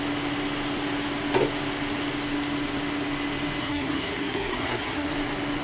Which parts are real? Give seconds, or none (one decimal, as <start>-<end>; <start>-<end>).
0.0-3.6; 5.1-5.6